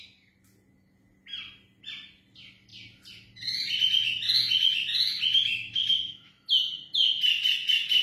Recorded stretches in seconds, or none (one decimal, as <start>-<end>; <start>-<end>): 0.0-5.5; 6.3-8.0